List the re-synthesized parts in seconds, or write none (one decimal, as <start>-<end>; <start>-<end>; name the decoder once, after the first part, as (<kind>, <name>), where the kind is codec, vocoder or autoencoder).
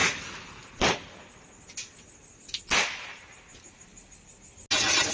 3.1-3.9 (vocoder, BigVGAN v2)